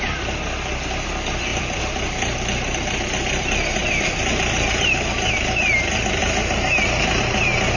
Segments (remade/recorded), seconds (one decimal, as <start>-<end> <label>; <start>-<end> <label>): 0.0-1.5 recorded; 1.5-5.3 remade; 5.3-7.8 recorded